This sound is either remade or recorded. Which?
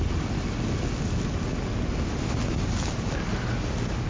recorded